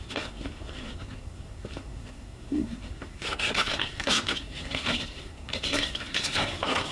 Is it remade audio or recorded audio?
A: remade